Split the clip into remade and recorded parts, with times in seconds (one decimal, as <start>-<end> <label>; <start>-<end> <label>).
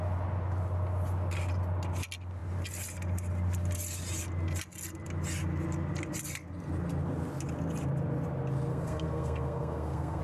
0.0-8.7 recorded; 8.7-10.2 remade